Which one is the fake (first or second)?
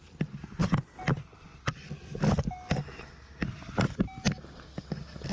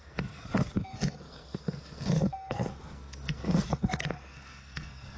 second